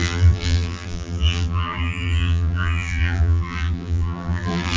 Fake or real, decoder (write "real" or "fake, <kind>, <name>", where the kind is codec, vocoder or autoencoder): fake, vocoder, BigVGAN v2